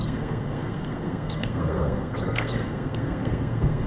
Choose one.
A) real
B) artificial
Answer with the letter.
B